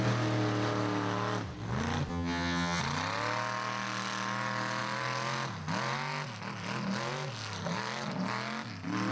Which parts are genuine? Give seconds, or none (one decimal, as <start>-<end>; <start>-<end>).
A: 0.0-2.1; 2.8-9.1